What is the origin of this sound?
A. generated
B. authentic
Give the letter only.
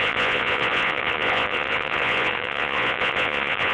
A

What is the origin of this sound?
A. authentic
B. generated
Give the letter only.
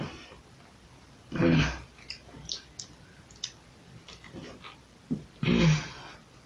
A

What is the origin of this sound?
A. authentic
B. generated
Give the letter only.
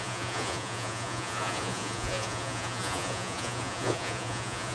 B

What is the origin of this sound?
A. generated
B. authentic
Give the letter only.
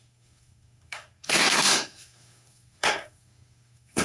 A